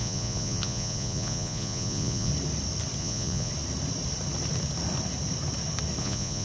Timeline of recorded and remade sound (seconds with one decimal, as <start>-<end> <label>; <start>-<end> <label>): 0.0-2.3 remade; 2.3-3.0 recorded; 3.0-3.5 remade; 3.5-6.0 recorded; 6.0-6.4 remade